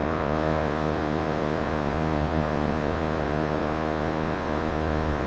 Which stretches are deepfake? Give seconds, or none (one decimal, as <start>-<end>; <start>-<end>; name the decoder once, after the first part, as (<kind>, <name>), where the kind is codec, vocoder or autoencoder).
0.0-5.3 (vocoder, Vocos)